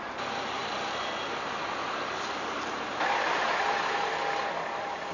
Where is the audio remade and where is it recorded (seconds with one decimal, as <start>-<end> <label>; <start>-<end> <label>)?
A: 0.0-5.1 recorded